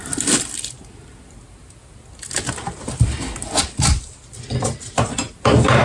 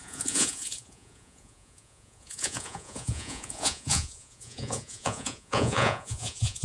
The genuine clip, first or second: first